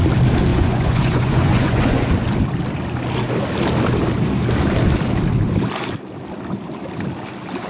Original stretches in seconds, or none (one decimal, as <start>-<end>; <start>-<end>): 0.0-0.5; 2.1-7.7